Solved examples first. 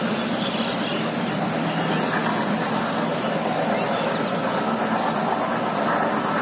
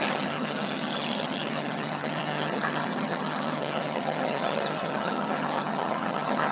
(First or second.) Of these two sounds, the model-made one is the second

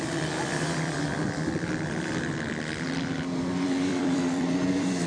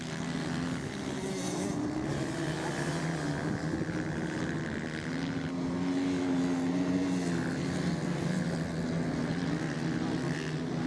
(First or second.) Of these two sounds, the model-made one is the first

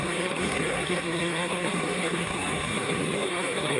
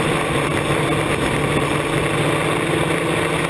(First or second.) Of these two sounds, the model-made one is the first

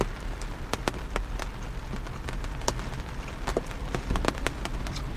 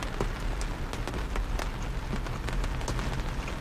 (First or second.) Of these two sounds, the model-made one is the first